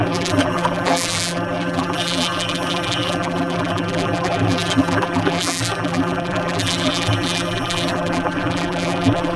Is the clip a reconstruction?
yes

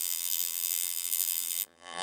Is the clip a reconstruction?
yes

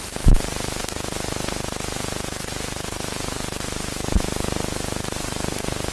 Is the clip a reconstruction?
yes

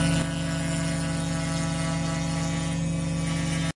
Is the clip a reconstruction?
no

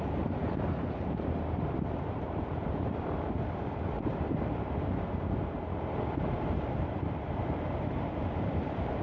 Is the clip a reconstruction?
yes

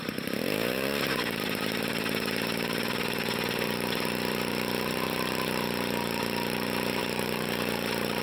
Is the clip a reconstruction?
yes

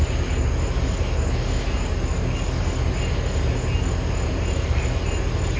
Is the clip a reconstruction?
no